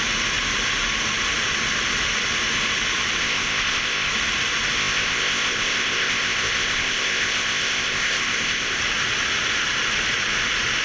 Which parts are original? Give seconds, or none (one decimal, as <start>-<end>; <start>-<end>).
0.0-3.2; 4.1-4.8; 8.8-10.8